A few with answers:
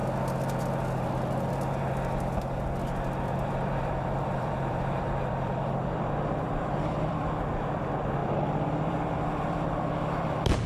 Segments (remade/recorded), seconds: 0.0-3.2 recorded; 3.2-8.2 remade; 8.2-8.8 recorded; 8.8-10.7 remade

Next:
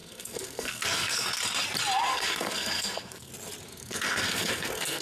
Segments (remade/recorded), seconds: 0.0-1.4 remade; 1.4-2.1 recorded; 2.1-3.3 remade; 3.3-3.7 recorded; 3.7-5.0 remade

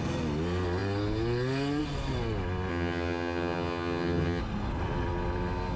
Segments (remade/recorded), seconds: 0.0-2.7 recorded; 2.7-4.4 remade; 4.4-5.8 recorded

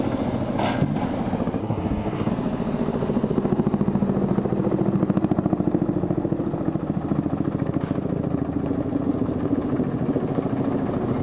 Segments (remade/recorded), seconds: 0.0-1.6 recorded; 1.6-2.3 remade; 2.3-11.2 recorded